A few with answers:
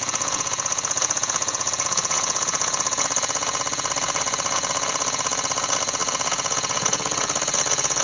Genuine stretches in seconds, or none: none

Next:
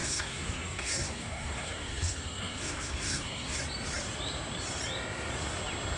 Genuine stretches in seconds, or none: 3.6-6.0

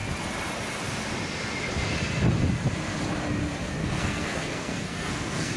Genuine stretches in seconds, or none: 0.0-3.8

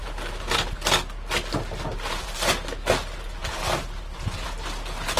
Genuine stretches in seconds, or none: 0.7-1.9; 2.5-3.4